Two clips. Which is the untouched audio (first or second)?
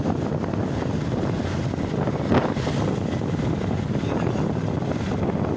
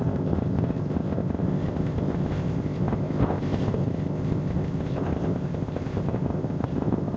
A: first